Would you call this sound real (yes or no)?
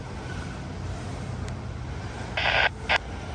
yes